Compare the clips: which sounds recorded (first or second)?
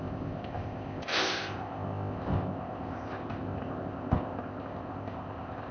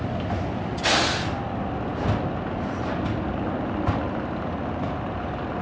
second